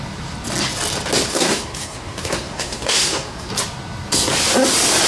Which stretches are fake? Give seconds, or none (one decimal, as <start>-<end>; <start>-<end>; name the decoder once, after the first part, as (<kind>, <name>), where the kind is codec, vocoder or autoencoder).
1.3-3.5 (codec, SNAC)